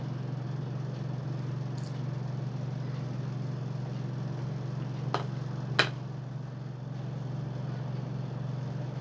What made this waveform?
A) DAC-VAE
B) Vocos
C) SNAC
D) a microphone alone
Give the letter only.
D